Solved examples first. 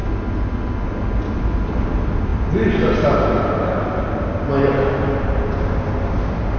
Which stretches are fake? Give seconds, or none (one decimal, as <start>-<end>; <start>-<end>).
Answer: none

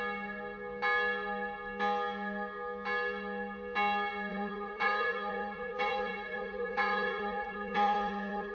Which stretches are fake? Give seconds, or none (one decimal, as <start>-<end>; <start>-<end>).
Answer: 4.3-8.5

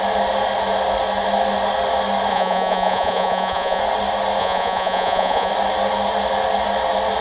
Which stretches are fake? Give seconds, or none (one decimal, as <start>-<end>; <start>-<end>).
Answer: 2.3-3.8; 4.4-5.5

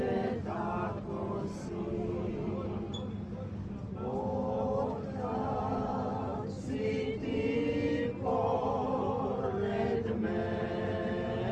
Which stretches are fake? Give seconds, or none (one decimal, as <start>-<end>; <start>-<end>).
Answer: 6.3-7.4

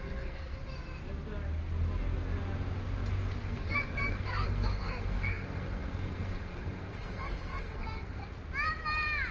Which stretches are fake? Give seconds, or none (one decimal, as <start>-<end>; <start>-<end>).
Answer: 0.0-0.6; 3.4-8.2

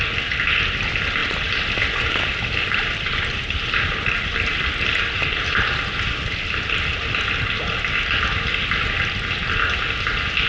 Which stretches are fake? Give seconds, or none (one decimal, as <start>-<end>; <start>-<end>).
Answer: 1.2-5.6